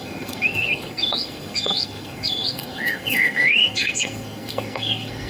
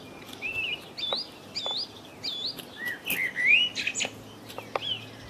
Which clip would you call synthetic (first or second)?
first